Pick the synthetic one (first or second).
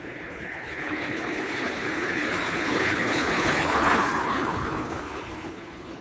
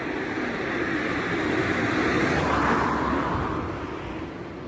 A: first